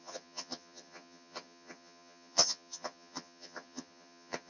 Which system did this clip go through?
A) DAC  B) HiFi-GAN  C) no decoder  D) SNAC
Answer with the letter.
B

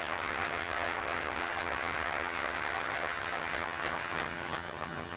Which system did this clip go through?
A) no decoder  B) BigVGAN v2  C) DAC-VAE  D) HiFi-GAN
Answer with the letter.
D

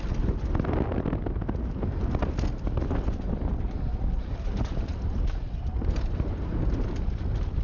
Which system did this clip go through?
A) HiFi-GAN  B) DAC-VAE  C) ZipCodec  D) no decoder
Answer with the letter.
D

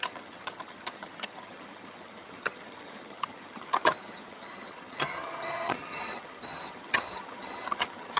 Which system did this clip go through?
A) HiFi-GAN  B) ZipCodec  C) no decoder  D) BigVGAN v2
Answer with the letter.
A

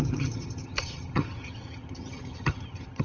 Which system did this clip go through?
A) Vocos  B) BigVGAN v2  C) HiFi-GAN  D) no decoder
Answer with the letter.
C